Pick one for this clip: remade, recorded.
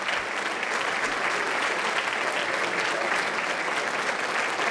recorded